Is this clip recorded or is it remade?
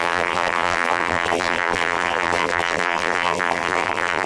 remade